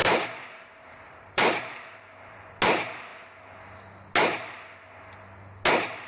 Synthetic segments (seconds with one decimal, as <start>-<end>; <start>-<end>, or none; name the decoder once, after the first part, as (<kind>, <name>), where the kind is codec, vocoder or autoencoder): 0.0-2.6 (vocoder, BigVGAN v2)